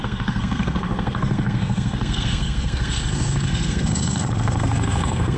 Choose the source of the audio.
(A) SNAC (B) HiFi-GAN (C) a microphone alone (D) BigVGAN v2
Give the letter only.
A